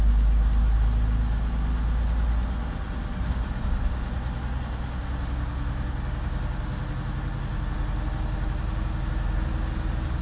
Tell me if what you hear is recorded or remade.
recorded